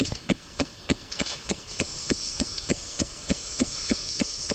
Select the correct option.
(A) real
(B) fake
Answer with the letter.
B